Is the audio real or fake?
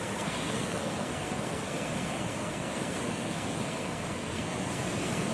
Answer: fake